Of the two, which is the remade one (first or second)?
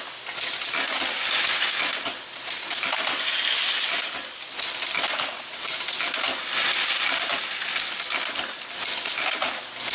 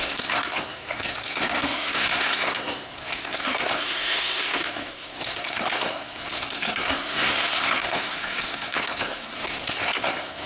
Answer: second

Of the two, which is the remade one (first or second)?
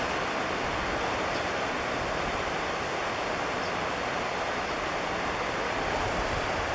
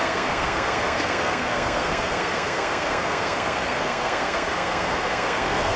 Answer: second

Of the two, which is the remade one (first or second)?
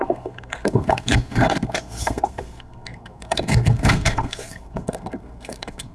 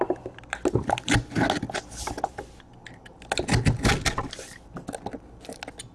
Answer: first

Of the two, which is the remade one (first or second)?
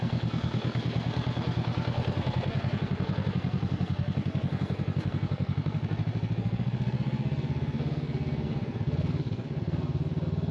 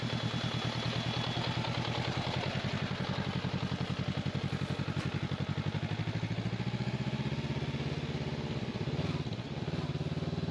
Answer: first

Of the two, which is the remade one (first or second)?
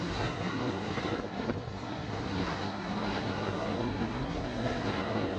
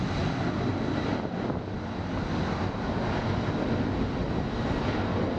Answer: first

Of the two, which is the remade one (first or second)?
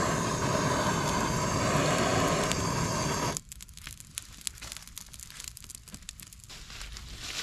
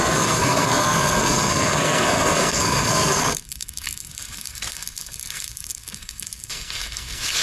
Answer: second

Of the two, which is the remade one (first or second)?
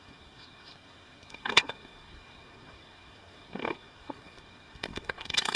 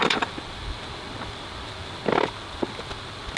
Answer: first